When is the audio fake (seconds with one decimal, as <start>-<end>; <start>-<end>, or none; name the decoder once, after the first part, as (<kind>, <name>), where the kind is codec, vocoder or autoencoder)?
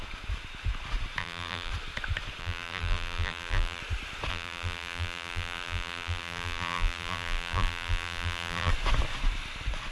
1.2-1.7 (vocoder, BigVGAN v2); 2.4-3.8; 4.3-8.7